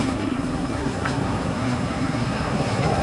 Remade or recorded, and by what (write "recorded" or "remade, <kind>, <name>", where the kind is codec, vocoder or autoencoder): remade, codec, SNAC